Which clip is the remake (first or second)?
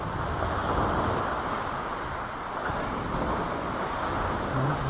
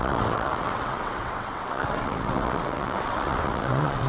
second